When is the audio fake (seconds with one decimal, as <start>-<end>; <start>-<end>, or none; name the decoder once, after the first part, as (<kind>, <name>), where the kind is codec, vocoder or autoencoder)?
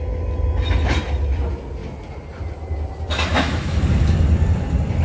3.3-3.8 (autoencoder, DAC-VAE)